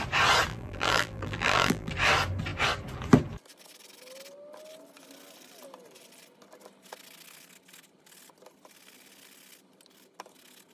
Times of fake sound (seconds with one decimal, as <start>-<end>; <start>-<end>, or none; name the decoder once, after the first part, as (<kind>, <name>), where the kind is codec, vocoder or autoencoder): 0.5-1.9 (vocoder, BigVGAN v2)